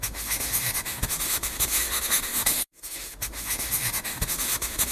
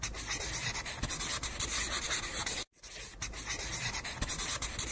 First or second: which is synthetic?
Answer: first